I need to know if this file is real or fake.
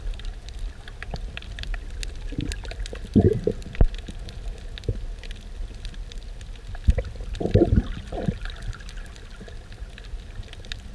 real